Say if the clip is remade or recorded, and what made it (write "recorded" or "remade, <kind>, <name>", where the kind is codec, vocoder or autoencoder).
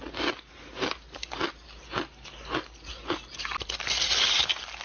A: recorded